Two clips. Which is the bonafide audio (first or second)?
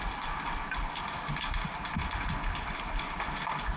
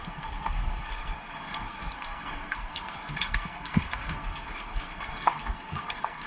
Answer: first